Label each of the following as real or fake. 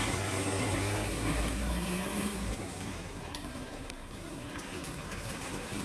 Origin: fake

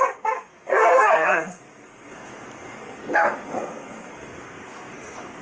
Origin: fake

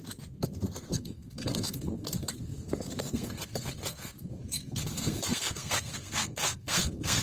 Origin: fake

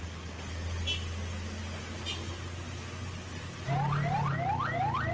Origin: real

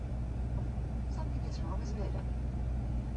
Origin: real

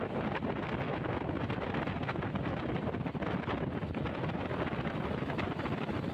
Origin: real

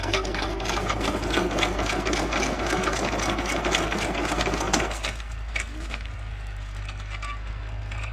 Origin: fake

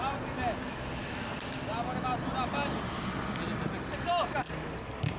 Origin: real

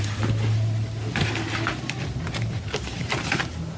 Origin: real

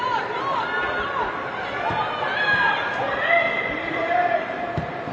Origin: real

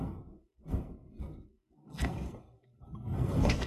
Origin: fake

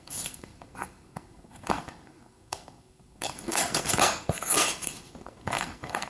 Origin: fake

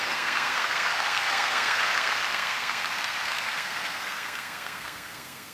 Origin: fake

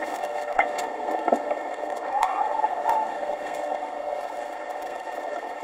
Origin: fake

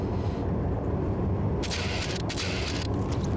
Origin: real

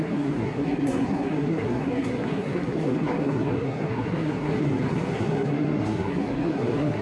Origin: fake